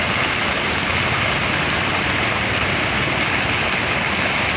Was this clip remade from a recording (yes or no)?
no